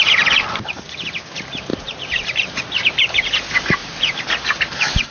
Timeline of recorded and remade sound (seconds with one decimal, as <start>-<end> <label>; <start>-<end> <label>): 0.0-1.7 recorded; 1.7-2.6 remade; 2.6-3.8 recorded; 3.8-5.1 remade